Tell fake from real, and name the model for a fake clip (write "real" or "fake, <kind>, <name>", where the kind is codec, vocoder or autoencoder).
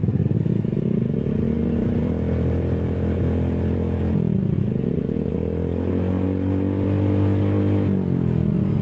real